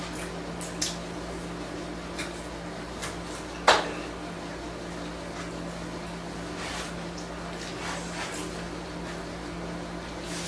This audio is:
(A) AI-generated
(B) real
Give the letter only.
B